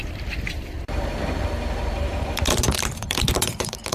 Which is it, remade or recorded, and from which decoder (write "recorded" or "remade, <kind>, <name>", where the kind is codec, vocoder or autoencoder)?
remade, vocoder, BigVGAN v2